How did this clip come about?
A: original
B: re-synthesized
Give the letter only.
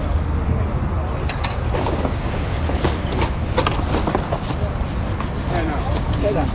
A